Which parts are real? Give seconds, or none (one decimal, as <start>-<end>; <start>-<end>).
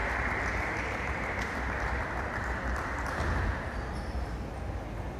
3.1-5.2